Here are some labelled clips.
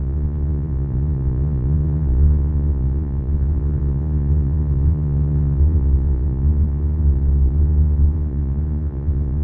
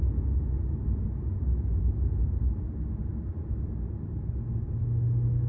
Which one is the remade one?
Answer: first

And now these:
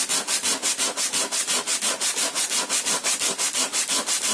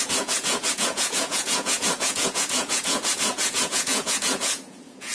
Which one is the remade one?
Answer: second